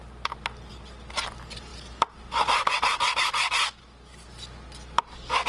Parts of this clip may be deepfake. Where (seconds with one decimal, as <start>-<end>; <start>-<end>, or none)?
none